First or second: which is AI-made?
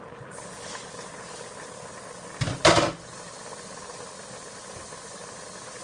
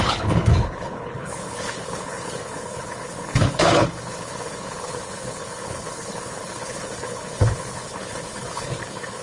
second